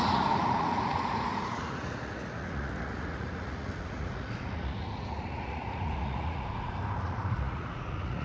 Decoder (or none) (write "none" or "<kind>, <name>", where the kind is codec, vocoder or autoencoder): vocoder, Vocos